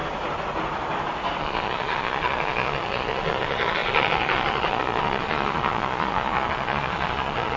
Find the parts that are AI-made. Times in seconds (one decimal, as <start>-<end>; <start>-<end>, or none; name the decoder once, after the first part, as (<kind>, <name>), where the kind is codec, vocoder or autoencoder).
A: 1.4-7.6 (vocoder, Vocos)